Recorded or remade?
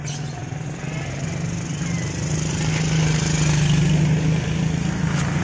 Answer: recorded